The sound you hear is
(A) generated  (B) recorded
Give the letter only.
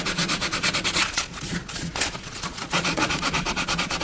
A